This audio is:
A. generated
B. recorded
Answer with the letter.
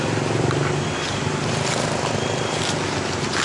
B